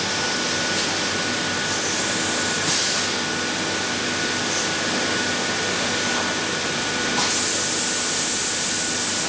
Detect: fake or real real